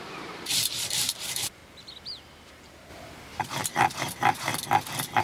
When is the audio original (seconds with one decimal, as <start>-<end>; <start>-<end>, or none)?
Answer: 1.6-2.5; 2.9-3.4; 4.5-5.2